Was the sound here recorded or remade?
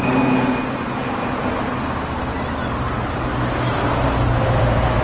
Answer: recorded